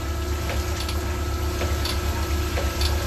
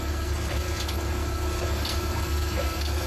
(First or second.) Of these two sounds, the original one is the first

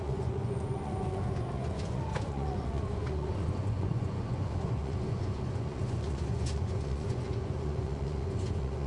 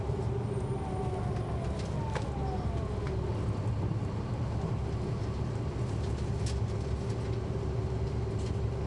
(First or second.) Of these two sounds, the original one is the second